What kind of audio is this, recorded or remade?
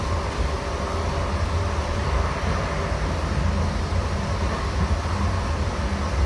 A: recorded